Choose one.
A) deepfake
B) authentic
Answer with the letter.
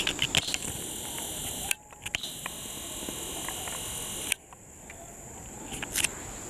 B